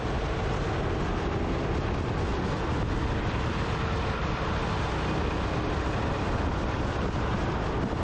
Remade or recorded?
recorded